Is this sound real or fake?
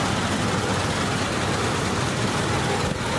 real